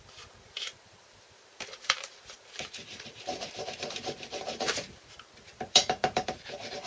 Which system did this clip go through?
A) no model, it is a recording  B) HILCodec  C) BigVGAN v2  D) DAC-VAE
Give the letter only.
C